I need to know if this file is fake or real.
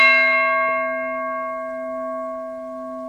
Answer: real